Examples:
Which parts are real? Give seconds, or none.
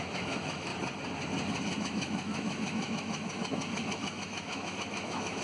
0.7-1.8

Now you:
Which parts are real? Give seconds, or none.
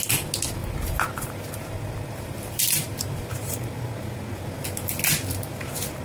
0.0-0.6; 3.9-6.0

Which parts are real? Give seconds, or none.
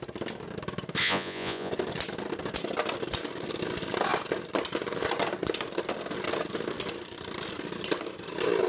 0.0-1.0; 1.7-8.7